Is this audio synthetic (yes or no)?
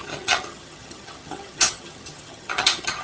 yes